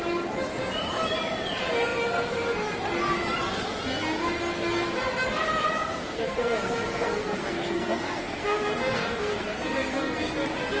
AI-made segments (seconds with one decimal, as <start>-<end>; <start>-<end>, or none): 6.0-10.3